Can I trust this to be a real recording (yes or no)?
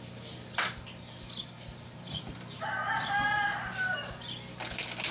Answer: yes